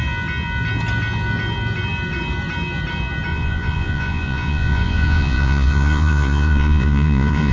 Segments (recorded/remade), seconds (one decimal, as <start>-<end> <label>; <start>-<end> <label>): 0.0-3.3 recorded; 3.3-7.5 remade

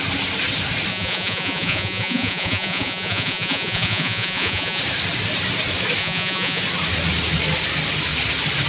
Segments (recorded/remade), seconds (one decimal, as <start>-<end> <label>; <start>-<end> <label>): 0.0-0.9 recorded; 0.9-4.8 remade; 4.8-6.0 recorded; 6.0-6.6 remade; 6.6-8.7 recorded

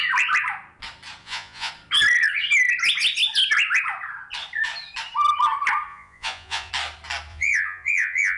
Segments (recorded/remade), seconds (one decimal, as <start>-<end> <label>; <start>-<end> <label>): 0.0-1.2 recorded; 1.2-1.7 remade; 1.7-5.9 recorded; 5.9-6.7 remade; 6.7-7.3 recorded; 7.3-8.4 remade